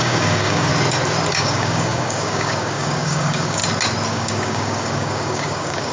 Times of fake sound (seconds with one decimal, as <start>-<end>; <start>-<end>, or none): 0.0-0.7; 1.3-3.6; 4.1-5.9